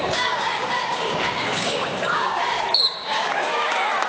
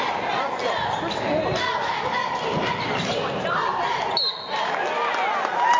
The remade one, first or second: first